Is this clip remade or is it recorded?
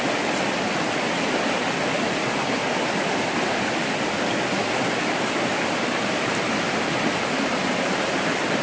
recorded